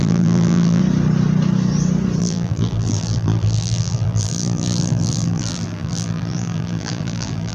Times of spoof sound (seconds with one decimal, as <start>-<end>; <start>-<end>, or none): 0.0-0.8; 2.2-7.5

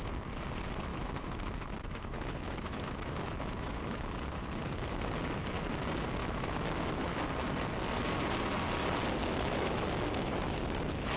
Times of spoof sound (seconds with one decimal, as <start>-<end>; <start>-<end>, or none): 0.9-5.1; 6.2-7.1; 9.2-11.2

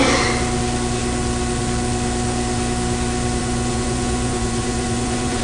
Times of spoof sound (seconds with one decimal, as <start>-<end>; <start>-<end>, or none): 3.4-5.4